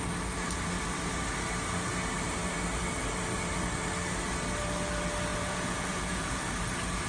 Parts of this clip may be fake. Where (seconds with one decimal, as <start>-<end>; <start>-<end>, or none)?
5.3-6.4